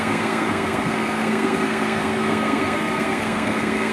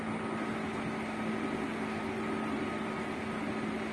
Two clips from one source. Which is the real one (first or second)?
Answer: second